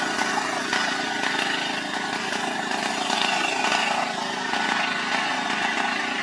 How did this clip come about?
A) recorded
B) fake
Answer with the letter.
A